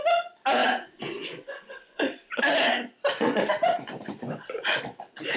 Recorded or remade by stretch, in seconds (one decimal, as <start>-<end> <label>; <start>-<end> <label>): 0.0-0.6 recorded; 0.6-2.3 remade; 2.3-3.3 recorded; 3.3-4.8 remade; 4.8-5.4 recorded